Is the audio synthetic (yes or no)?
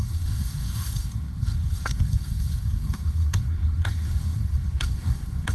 yes